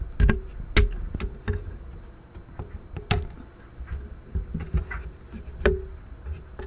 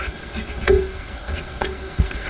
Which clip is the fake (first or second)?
second